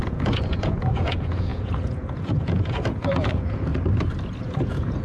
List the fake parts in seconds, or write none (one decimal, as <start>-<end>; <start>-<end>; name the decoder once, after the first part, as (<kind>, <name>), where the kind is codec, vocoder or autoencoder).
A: 0.0-3.7 (vocoder, Vocos); 4.4-5.0